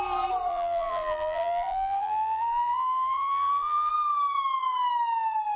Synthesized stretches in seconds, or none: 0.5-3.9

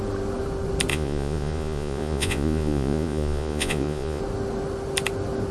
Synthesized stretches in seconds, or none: 0.9-4.2

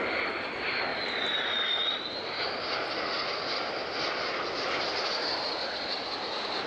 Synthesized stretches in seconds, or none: none

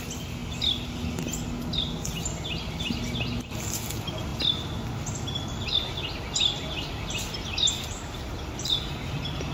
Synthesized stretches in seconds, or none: none

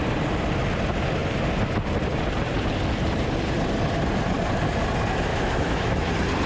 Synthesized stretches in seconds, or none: 5.3-6.1

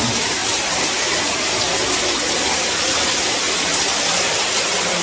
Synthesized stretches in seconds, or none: none

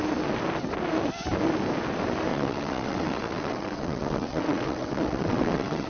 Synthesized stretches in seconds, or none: 2.3-5.9

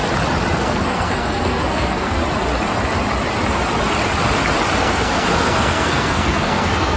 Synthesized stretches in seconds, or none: 0.6-2.2; 4.8-7.0